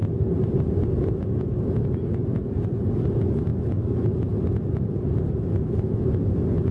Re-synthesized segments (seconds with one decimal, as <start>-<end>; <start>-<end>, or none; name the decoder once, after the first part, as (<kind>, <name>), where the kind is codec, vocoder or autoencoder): none